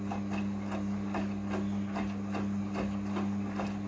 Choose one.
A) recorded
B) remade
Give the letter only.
A